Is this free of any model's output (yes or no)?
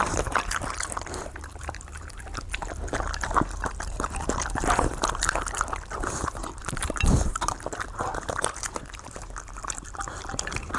no